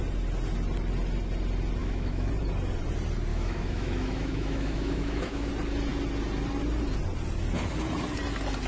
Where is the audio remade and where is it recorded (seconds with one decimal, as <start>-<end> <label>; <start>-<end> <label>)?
0.0-1.8 recorded; 1.8-2.3 remade; 2.3-3.3 recorded; 3.3-5.5 remade; 5.5-8.7 recorded